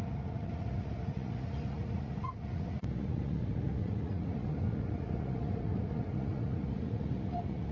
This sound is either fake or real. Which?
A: fake